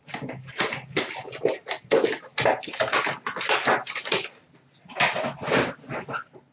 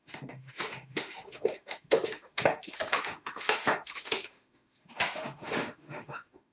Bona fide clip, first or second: first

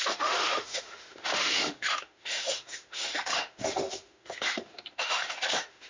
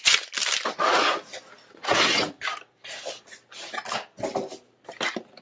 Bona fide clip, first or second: second